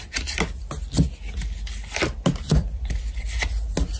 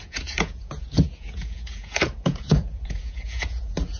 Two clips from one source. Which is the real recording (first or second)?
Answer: first